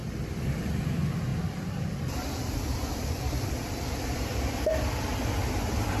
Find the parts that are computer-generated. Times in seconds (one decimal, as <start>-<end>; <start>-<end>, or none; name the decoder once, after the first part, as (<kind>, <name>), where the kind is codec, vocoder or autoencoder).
0.0-6.0 (vocoder, BigVGAN v2)